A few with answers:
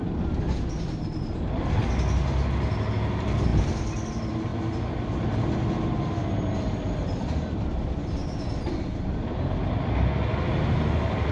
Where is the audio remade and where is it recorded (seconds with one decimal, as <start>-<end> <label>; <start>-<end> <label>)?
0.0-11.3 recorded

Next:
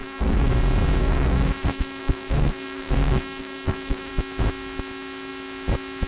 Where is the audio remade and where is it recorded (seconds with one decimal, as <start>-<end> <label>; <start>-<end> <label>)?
0.0-0.5 remade; 0.5-1.0 recorded; 1.0-4.1 remade; 4.1-6.1 recorded

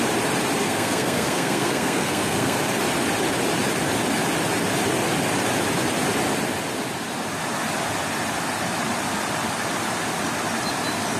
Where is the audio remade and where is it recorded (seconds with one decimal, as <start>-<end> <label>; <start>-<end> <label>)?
0.0-0.6 recorded; 0.6-2.6 remade; 2.6-11.2 recorded

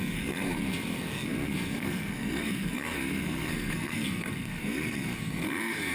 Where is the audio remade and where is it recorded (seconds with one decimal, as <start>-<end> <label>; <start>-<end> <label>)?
0.0-5.9 remade

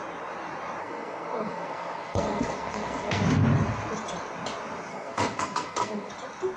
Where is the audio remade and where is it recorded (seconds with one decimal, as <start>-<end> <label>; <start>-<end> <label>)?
0.0-0.8 recorded; 0.8-3.2 remade; 3.2-4.9 recorded; 4.9-6.1 remade; 6.1-6.6 recorded

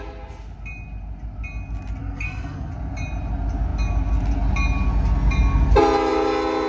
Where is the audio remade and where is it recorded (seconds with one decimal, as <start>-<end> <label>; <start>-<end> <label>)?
0.0-2.0 recorded; 2.0-2.7 remade; 2.7-6.7 recorded

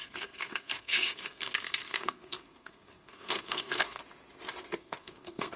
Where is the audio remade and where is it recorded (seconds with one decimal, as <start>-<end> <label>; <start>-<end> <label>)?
0.0-4.0 remade; 4.0-4.8 recorded; 4.8-5.6 remade

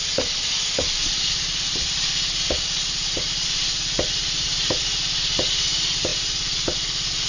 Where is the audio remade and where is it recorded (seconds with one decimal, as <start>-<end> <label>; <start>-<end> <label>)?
0.0-7.3 recorded